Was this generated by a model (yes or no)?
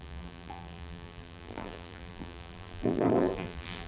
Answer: yes